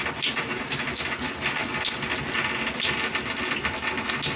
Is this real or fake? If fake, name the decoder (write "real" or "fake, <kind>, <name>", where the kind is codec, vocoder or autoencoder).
real